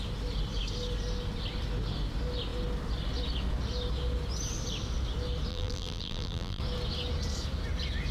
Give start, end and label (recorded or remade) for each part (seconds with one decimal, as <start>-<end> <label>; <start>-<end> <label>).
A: 0.0-5.5 recorded; 5.5-6.6 remade; 6.6-8.1 recorded